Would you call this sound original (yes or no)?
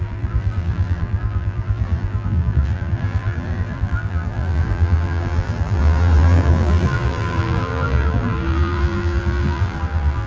no